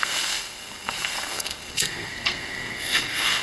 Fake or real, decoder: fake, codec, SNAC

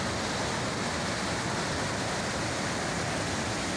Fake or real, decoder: real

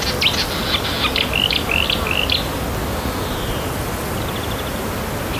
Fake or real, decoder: real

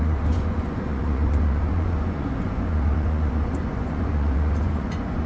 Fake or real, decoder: fake, vocoder, Vocos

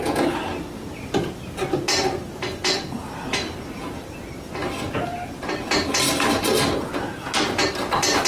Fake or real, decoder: real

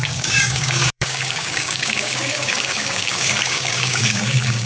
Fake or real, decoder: fake, codec, DAC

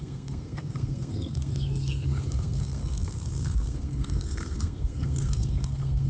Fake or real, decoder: fake, codec, SNAC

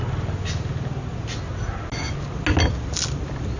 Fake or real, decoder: real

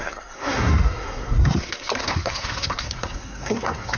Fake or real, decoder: fake, codec, SNAC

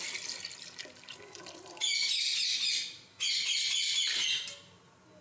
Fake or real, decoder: real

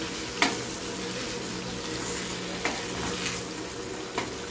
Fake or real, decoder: real